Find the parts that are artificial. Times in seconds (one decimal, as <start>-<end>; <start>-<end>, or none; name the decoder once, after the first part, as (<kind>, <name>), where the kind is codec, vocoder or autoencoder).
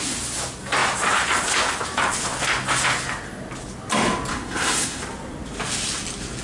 4.3-5.0 (codec, SNAC)